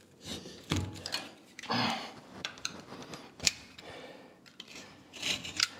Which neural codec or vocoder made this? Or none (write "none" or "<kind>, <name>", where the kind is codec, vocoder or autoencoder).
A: vocoder, BigVGAN v2